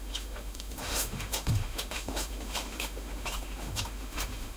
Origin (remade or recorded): remade